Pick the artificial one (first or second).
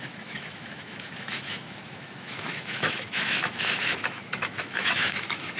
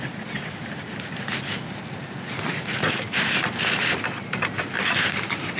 first